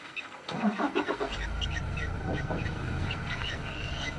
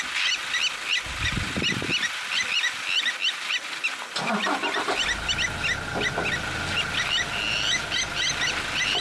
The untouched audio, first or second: second